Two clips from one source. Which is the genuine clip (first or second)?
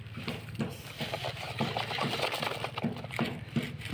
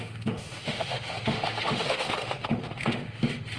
first